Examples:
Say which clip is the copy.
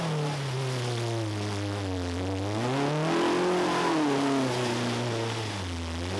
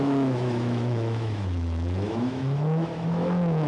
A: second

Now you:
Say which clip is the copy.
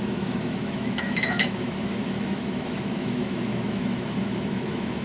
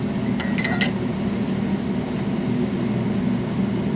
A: first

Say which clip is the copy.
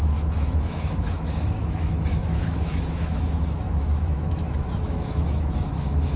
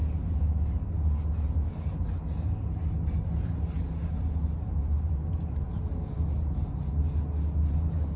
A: first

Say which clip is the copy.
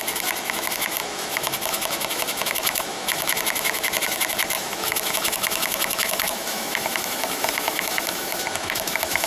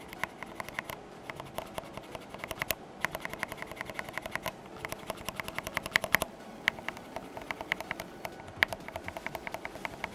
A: first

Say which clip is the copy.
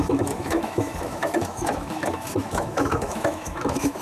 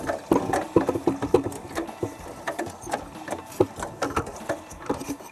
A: first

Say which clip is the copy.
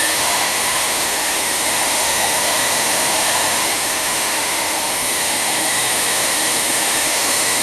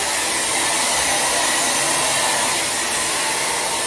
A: first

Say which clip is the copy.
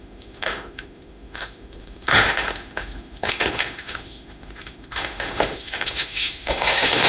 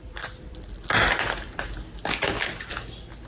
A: first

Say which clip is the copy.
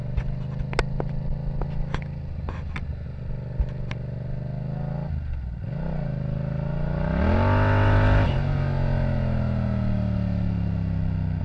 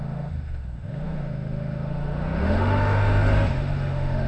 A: second